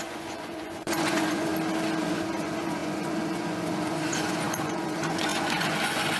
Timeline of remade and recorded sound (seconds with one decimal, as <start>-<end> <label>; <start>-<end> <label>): 0.0-1.5 remade; 1.5-2.0 recorded; 2.0-6.2 remade